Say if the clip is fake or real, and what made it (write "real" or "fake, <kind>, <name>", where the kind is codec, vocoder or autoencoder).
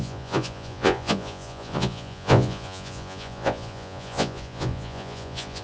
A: fake, vocoder, Vocos